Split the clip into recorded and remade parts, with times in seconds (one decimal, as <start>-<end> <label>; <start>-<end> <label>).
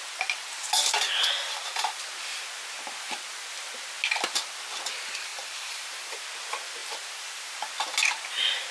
0.0-1.2 recorded; 1.2-2.0 remade; 2.0-5.3 recorded; 5.3-6.2 remade; 6.2-6.8 recorded; 6.8-7.7 remade; 7.7-8.7 recorded